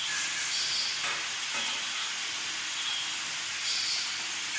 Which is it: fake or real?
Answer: real